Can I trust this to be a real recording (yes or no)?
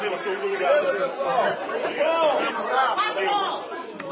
no